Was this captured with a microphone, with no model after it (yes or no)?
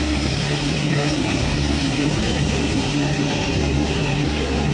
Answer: no